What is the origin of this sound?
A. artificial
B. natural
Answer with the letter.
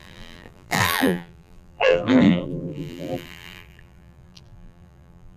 A